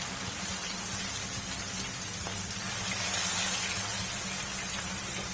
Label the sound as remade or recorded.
recorded